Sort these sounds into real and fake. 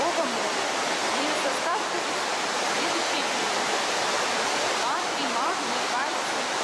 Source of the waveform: fake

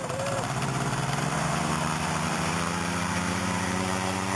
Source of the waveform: fake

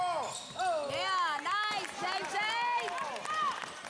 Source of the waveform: real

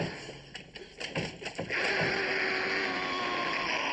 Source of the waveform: real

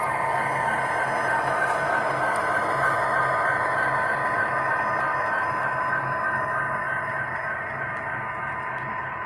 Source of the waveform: real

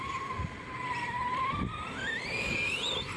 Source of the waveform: real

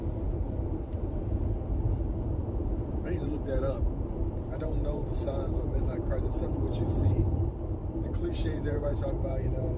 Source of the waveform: fake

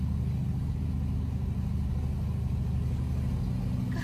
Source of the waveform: real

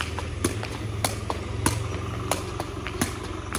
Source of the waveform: real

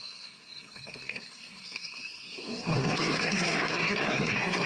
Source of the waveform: fake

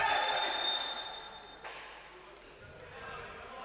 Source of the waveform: real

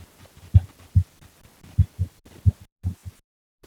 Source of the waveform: fake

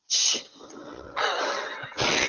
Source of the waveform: fake